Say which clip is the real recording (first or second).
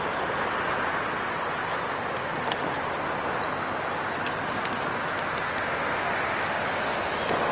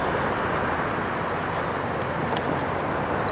first